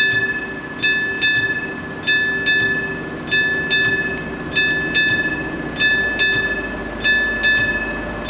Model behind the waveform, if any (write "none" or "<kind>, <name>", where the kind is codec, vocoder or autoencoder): none